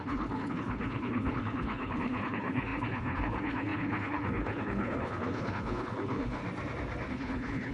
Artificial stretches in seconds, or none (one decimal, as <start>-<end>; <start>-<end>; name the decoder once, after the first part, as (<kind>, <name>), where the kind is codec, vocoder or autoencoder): 0.0-6.4 (codec, HILCodec); 7.1-7.7